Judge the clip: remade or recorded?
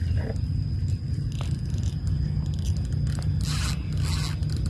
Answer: recorded